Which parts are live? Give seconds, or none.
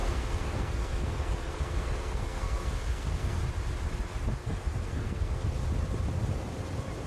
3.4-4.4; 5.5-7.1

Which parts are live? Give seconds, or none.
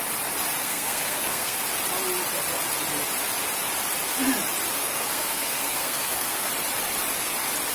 0.0-0.6; 1.6-4.8; 6.5-7.7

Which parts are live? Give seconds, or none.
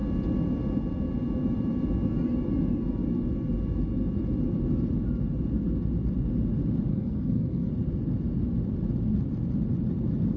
0.0-6.9; 7.7-10.4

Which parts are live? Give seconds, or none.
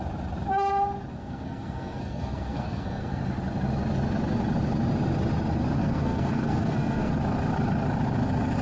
0.0-1.1; 3.2-5.8; 7.1-8.6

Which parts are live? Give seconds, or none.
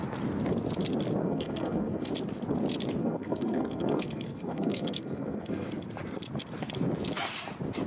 0.0-1.2; 2.1-3.0; 5.7-7.9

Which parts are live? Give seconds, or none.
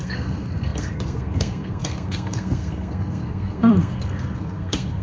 none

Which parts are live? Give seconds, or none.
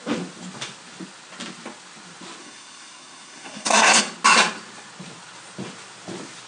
0.0-2.4; 4.0-6.5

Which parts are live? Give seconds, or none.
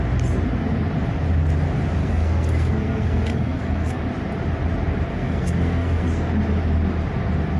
0.0-2.0; 4.0-5.1; 6.3-7.6